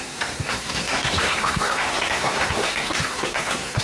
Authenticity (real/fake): fake